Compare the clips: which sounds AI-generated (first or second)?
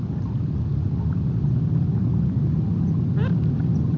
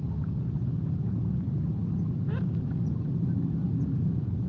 second